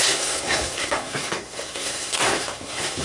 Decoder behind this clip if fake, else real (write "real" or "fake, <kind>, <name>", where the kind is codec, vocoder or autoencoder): fake, codec, SNAC